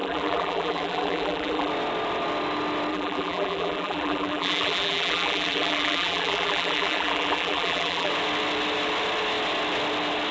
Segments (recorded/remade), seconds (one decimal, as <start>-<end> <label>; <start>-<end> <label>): 0.0-1.7 remade; 1.7-2.9 recorded; 2.9-8.1 remade; 8.1-10.3 recorded